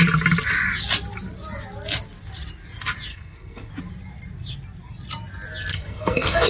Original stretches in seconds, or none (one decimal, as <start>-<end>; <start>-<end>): 0.0-3.1; 3.7-5.7

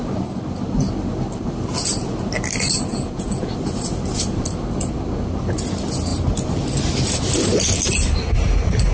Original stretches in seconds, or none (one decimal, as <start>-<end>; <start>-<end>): 0.0-2.9; 3.5-8.9